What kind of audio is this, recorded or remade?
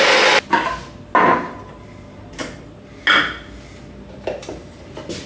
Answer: recorded